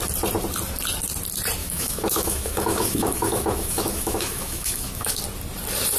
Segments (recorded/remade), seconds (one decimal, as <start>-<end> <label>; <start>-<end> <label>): 0.0-1.6 recorded; 1.6-5.2 remade; 5.2-6.0 recorded